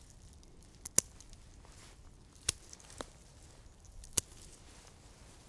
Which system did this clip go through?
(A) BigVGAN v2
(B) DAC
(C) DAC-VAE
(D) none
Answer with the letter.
D